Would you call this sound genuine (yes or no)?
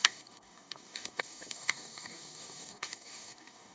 no